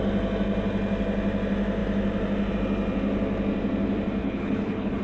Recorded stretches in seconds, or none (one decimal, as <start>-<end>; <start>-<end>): 0.0-4.2